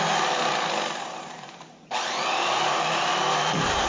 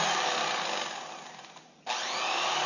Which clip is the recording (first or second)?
second